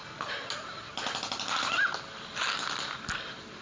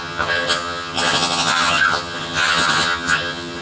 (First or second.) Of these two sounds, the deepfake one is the second